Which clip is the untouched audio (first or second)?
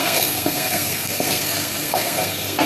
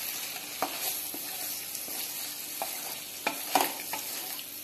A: second